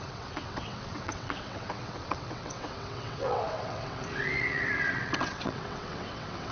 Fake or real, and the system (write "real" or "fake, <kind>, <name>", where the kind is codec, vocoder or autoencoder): fake, vocoder, WaveNeXt